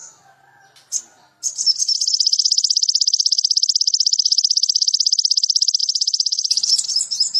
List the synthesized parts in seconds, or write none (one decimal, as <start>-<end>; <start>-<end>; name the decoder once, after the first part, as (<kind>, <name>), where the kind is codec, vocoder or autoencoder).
5.8-6.7 (vocoder, Vocos)